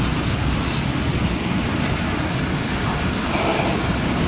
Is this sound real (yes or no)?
yes